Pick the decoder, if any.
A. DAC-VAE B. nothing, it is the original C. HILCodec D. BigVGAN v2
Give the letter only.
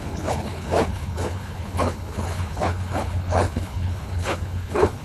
C